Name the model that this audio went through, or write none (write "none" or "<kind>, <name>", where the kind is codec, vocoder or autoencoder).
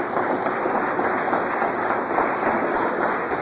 none